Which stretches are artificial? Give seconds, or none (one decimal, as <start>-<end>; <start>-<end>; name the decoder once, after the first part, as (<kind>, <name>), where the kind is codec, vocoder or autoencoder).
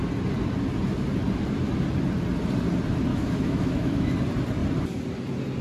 3.1-4.1 (autoencoder, DAC-VAE)